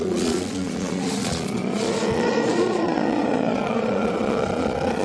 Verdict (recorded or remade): remade